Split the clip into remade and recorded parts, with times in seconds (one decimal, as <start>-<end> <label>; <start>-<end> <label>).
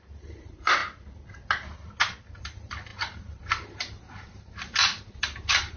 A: 0.0-0.8 remade; 0.8-2.2 recorded; 2.2-5.8 remade